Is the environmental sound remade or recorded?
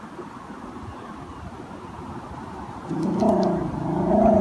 recorded